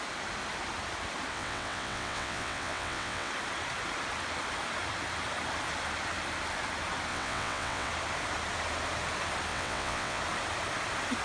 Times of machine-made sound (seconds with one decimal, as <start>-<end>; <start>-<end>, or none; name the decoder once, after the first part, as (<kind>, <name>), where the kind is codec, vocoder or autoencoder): 1.3-3.3 (vocoder, WaveNeXt); 7.1-7.9; 9.5-10.2